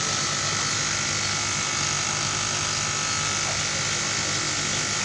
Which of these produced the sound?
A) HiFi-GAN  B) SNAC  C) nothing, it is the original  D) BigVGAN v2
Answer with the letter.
C